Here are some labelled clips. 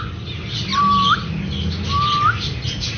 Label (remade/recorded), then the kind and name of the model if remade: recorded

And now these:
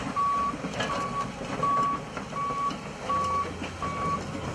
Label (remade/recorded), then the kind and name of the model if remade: recorded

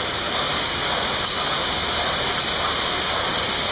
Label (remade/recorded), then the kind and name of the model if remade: recorded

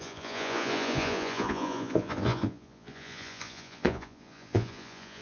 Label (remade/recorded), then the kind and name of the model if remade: remade, vocoder, Vocos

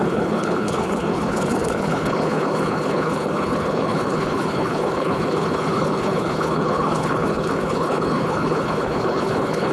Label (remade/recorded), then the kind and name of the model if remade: remade, codec, HILCodec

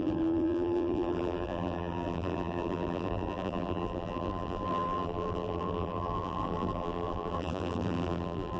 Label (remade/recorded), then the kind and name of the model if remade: remade, vocoder, BigVGAN v2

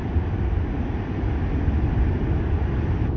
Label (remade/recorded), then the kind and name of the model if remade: recorded